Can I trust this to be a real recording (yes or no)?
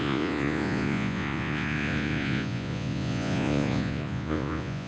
no